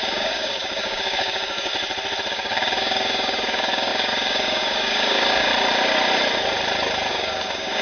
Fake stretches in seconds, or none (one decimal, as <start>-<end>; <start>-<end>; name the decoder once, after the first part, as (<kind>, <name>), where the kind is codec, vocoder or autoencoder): 0.0-1.7 (codec, DAC); 2.3-5.5; 7.1-7.8